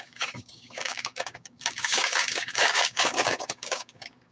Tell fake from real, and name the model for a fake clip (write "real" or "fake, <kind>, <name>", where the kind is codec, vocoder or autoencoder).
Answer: fake, codec, DAC